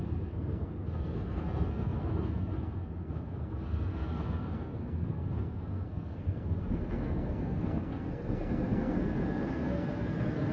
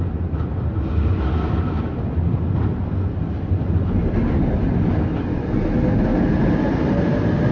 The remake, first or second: first